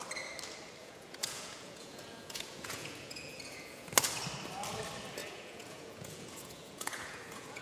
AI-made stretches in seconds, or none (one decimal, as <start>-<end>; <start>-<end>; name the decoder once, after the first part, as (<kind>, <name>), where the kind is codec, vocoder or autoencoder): 0.8-3.9 (vocoder, Vocos); 5.2-7.6